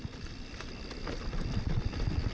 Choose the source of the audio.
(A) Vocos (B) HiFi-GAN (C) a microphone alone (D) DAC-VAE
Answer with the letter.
C